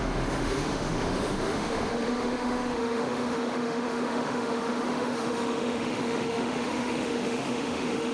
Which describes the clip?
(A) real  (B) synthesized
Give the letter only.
B